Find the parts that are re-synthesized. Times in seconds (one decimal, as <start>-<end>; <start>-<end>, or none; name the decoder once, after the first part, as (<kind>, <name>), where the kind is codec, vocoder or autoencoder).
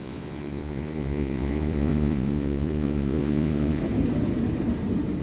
0.0-3.8 (vocoder, Vocos)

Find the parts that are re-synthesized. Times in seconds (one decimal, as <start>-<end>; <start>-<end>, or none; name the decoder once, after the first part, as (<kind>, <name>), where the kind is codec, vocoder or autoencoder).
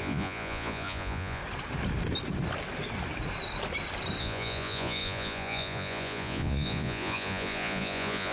0.0-1.4 (vocoder, Vocos); 4.2-8.3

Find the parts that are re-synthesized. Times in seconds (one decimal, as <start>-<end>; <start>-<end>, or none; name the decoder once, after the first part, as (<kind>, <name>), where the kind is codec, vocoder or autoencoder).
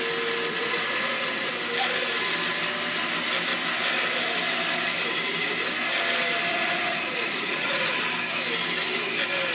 0.5-1.5 (vocoder, Vocos); 6.5-7.9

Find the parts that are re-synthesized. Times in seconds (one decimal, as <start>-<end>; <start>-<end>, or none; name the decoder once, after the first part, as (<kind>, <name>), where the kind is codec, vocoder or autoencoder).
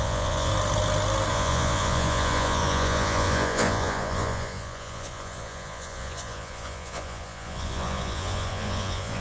0.0-0.5 (vocoder, Vocos); 1.3-9.2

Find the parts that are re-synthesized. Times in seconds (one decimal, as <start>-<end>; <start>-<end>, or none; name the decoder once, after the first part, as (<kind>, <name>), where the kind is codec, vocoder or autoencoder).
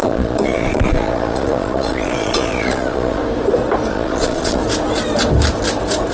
0.0-3.2 (vocoder, Vocos); 3.9-4.6